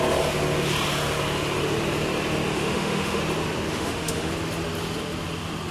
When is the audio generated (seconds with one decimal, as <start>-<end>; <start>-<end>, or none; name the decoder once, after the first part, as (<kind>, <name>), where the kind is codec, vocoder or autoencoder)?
2.5-3.2 (autoencoder, DAC-VAE); 3.7-4.3